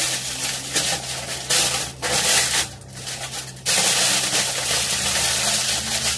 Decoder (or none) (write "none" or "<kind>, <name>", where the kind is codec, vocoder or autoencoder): none